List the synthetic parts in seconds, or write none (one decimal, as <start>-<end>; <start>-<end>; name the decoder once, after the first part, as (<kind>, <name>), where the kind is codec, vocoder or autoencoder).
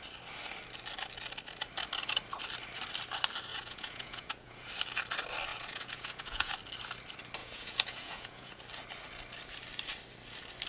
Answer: 3.5-4.7 (vocoder, Vocos); 5.5-6.5; 7.4-8.6